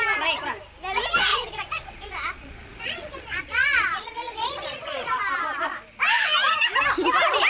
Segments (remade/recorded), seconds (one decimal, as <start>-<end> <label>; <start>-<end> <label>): 0.0-1.3 recorded; 1.3-5.2 remade; 5.2-7.5 recorded